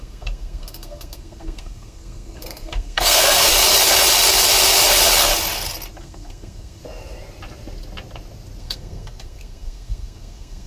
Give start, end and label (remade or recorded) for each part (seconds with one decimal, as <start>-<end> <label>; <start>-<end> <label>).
0.0-3.5 remade; 3.5-6.0 recorded; 6.0-6.8 remade; 6.8-8.6 recorded; 8.6-10.7 remade